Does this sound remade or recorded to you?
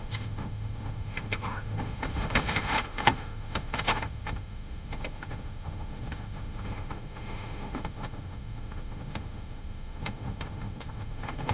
remade